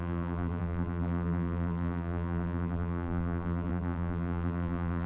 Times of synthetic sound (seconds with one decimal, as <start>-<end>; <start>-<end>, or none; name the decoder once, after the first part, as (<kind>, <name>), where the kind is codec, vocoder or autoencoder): 0.0-5.1 (vocoder, BigVGAN v2)